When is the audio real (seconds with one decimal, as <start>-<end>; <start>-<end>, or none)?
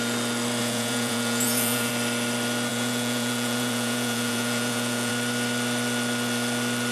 0.0-0.6; 1.9-2.7; 5.1-6.9